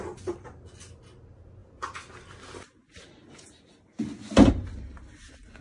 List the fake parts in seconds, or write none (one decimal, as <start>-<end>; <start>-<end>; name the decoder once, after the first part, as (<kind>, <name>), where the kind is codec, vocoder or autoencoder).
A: none